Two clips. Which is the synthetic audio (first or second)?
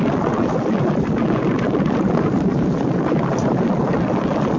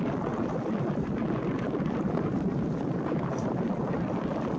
second